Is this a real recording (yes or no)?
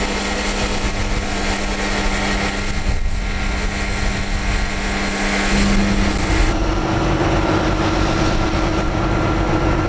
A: yes